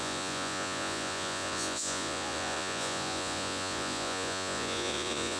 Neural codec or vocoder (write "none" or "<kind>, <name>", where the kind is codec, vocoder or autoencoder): vocoder, Vocos